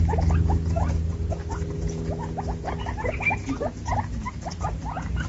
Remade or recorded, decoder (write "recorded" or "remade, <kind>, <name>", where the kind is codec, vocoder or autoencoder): recorded